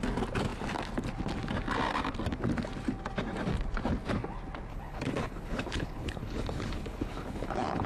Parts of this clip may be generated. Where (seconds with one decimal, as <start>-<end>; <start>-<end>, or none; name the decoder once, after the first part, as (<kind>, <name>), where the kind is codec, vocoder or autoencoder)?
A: 4.7-7.9 (codec, HILCodec)